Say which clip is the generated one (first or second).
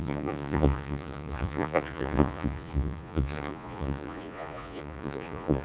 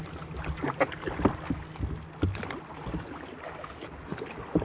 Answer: first